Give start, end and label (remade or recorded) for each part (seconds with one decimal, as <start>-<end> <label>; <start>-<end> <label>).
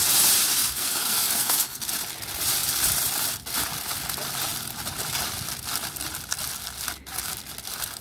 0.0-0.5 recorded; 0.5-1.9 remade; 1.9-8.0 recorded